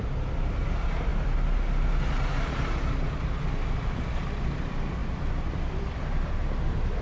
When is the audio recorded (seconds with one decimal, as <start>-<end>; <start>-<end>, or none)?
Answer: 0.0-7.0